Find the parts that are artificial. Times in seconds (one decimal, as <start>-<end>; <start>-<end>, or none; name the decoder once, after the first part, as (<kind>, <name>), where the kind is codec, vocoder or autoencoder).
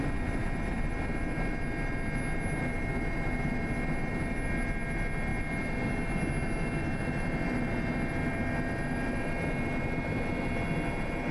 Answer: none